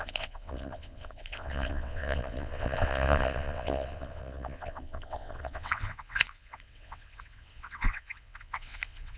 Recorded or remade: remade